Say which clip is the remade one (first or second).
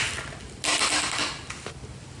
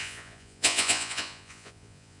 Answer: second